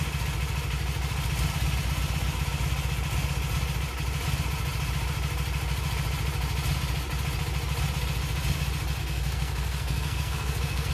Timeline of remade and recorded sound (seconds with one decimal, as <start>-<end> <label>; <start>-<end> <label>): 0.0-9.0 recorded; 9.0-10.9 remade